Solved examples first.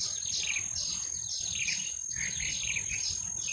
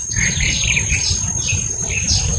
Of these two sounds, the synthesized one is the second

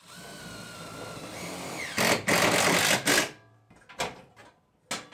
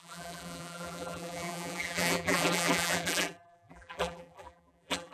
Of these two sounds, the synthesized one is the second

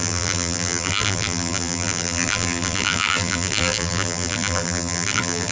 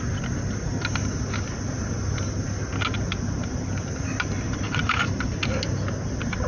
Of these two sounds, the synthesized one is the first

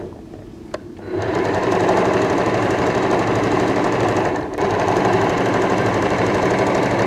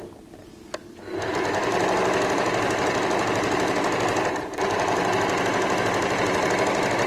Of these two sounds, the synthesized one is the first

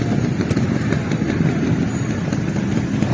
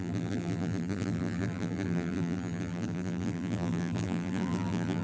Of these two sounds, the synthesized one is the second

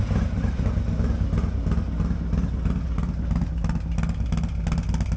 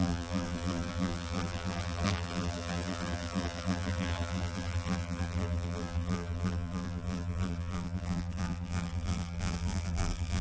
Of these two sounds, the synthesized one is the second